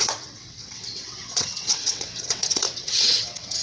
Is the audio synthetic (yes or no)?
yes